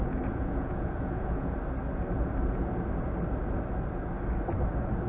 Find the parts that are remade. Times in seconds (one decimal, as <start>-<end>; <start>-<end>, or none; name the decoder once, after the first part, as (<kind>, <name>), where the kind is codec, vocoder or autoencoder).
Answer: 0.0-1.5 (vocoder, Vocos)